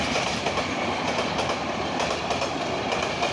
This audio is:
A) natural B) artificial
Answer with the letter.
A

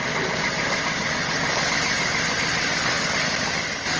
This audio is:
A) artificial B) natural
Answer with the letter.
B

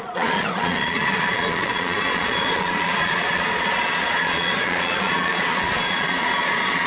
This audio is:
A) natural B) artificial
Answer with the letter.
B